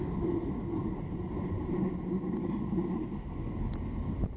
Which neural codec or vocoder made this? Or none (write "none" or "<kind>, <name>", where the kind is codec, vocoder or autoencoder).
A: none